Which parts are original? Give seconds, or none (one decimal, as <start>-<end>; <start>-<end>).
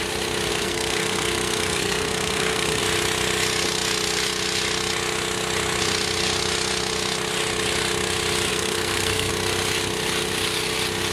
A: 0.0-0.5; 2.8-8.5; 9.3-11.1